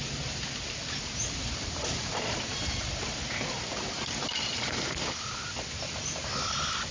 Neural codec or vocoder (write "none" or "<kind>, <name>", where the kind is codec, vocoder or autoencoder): none